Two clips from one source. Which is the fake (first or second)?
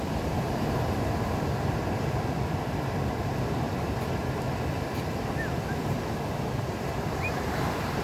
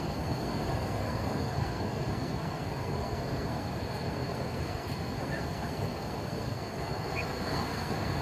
second